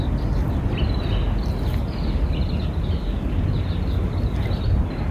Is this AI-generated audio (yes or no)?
no